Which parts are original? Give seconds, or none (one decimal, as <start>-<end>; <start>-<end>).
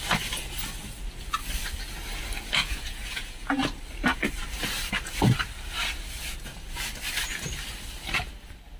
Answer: 0.0-2.6; 3.6-8.8